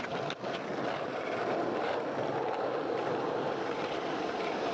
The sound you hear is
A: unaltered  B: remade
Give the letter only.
A